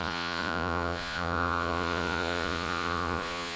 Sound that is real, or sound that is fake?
fake